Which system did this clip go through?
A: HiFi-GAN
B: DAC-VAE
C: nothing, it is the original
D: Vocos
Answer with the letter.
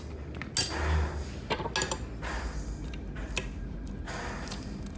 C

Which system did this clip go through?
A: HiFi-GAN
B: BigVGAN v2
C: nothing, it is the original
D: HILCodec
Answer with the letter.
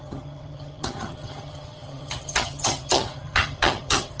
A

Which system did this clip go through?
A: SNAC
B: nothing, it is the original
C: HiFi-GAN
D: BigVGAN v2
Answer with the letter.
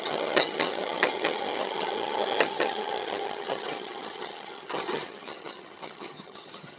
C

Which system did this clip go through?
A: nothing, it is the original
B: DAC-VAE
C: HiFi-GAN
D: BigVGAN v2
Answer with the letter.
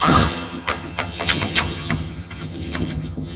C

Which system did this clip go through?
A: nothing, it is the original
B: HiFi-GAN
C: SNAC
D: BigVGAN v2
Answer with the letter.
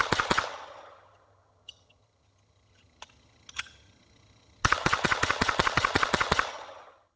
B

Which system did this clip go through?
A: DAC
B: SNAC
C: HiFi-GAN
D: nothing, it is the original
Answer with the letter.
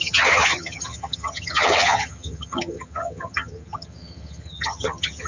C